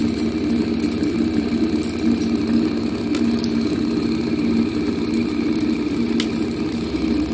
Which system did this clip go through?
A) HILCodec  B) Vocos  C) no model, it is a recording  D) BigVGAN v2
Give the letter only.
C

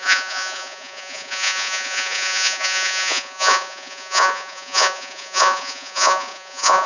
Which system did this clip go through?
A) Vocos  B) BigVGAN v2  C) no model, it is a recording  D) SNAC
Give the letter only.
A